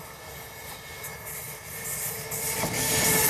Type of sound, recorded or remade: recorded